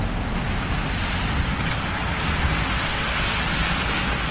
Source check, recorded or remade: recorded